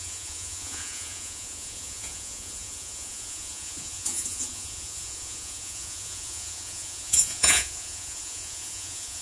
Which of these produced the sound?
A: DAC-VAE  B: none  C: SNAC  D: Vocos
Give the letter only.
D